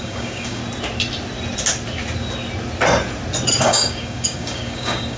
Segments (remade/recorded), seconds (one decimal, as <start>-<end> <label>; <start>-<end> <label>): 0.0-0.6 remade; 0.6-3.6 recorded; 3.6-5.2 remade